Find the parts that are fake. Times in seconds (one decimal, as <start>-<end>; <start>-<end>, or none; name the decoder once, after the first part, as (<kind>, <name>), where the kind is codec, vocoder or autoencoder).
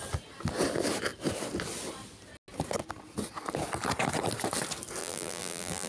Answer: 5.0-5.9 (vocoder, BigVGAN v2)